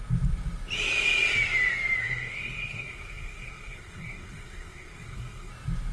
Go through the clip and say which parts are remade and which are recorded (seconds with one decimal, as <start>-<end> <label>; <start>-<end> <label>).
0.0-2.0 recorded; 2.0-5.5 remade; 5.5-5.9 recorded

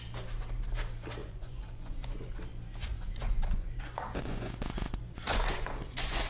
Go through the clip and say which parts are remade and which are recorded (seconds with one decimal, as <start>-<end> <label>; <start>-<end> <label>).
0.0-1.2 recorded; 1.2-2.3 remade; 2.3-2.9 recorded; 2.9-6.3 remade

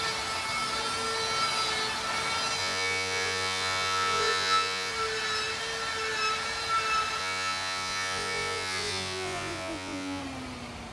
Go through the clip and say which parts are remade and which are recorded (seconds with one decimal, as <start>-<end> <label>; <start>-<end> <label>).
0.0-2.6 recorded; 2.6-4.9 remade; 4.9-7.2 recorded; 7.2-10.2 remade; 10.2-10.9 recorded

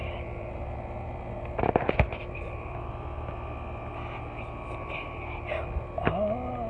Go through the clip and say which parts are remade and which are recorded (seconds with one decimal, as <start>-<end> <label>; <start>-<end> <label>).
0.0-3.3 remade; 3.3-6.7 recorded

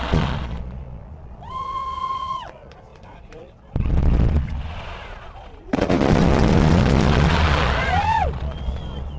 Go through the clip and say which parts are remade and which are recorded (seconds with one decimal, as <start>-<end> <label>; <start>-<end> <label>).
0.0-9.2 remade

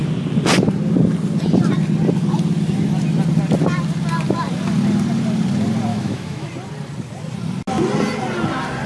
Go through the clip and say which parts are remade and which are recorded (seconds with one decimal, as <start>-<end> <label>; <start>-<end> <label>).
0.0-5.9 recorded; 5.9-6.5 remade; 6.5-8.9 recorded

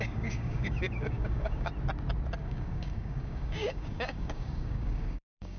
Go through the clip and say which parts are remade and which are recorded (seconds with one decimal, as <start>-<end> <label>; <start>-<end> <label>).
0.0-1.7 remade; 1.7-2.4 recorded; 2.4-5.6 remade